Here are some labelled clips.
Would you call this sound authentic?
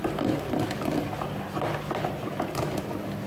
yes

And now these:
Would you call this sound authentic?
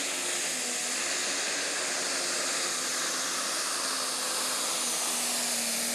yes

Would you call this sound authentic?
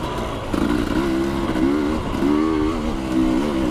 yes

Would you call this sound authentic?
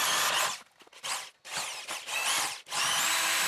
yes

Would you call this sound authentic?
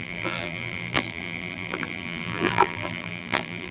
no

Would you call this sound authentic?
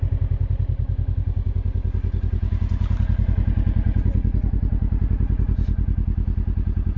yes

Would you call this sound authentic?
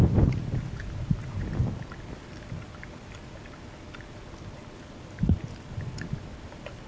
yes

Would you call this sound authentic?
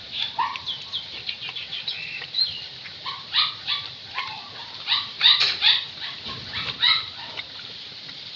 no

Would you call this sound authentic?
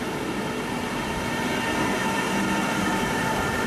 no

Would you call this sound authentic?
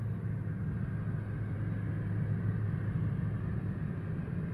yes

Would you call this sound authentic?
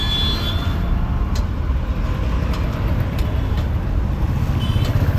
yes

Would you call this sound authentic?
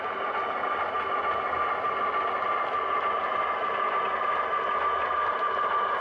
yes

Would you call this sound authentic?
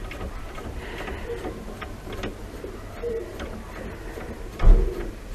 yes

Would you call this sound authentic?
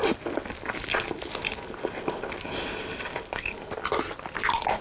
yes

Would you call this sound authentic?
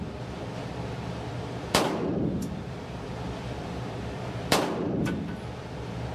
no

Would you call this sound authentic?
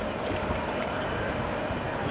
no